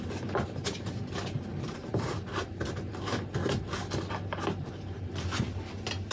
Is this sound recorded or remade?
recorded